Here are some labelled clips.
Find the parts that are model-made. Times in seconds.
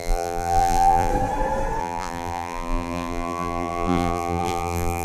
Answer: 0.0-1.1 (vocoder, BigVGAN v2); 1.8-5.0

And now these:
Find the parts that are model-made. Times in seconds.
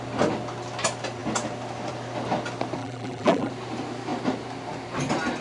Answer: 2.8-3.5 (vocoder, BigVGAN v2)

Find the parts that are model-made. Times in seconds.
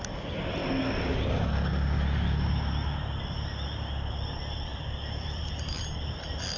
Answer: 4.7-5.8 (vocoder, BigVGAN v2)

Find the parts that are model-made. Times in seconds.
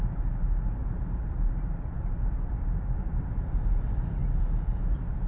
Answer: 0.8-3.8 (vocoder, BigVGAN v2)